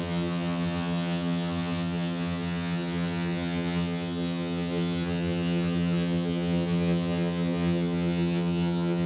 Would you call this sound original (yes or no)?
no